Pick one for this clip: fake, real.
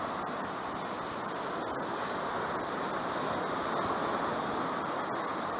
real